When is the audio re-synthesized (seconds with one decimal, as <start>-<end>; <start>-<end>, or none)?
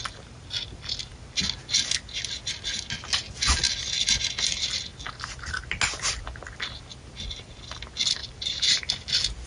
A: 8.2-9.1